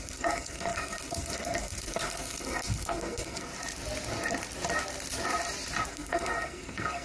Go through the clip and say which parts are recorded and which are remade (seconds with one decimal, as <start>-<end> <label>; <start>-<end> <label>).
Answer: 0.0-3.5 remade; 3.5-5.9 recorded; 5.9-7.0 remade